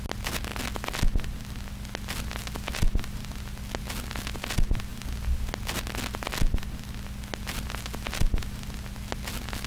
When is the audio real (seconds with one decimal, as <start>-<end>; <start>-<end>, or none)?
0.0-9.7